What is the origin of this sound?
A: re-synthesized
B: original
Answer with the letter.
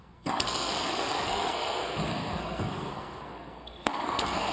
A